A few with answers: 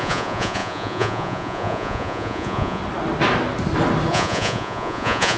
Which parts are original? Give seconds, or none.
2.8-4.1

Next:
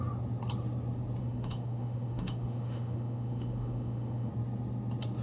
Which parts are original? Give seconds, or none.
0.0-1.2; 4.3-5.2

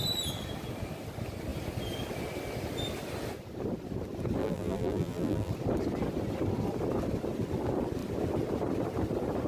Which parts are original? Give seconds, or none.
0.0-4.4; 5.5-9.5

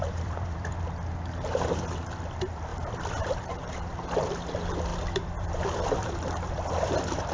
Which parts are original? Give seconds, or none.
0.9-2.7; 3.3-4.9